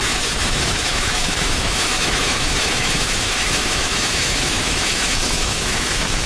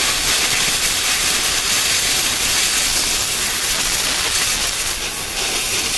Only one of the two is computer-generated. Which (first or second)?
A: first